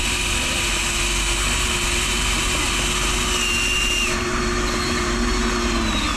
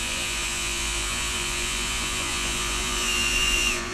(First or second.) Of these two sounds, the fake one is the second